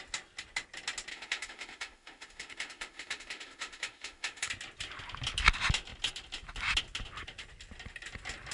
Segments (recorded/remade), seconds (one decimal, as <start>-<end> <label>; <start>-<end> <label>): 0.0-1.1 recorded; 1.1-4.5 remade; 4.5-8.5 recorded